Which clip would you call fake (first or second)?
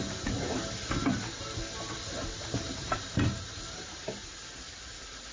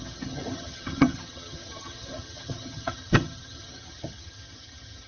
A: second